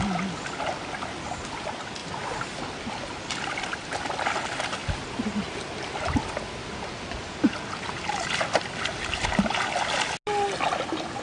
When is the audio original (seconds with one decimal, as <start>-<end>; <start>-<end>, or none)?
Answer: 0.0-11.2